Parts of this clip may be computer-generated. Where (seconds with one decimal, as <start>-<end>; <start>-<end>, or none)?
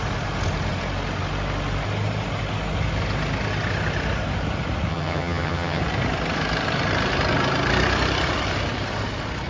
4.9-5.8